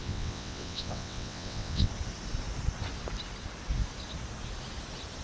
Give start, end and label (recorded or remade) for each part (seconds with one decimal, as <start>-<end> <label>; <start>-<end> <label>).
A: 0.0-1.9 remade; 1.9-5.2 recorded